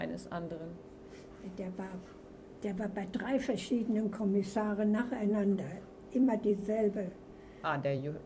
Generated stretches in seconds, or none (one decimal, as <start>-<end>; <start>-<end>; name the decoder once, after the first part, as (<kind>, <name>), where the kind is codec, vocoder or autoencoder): 0.0-0.8 (vocoder, BigVGAN v2); 5.3-6.6; 7.4-8.3